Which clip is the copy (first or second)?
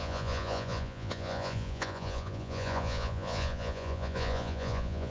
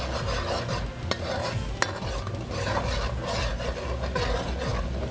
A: first